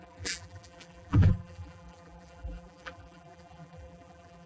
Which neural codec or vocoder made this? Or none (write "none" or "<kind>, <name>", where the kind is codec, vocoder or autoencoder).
vocoder, BigVGAN v2